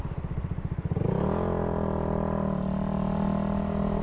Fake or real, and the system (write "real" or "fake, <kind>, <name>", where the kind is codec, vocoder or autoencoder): real